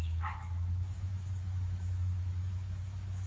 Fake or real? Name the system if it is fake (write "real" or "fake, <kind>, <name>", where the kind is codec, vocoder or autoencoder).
fake, autoencoder, DAC-VAE